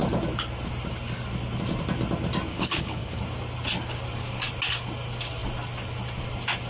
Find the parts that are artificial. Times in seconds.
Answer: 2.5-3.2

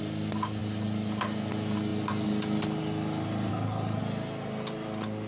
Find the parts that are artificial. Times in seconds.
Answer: 3.5-4.0

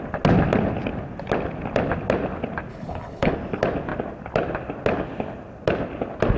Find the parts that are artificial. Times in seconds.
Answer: 2.7-3.3

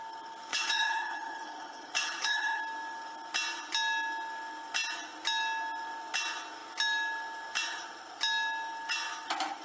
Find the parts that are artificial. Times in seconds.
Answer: 0.5-2.6

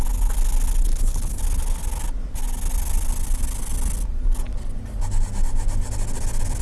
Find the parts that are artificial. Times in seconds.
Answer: 0.8-1.4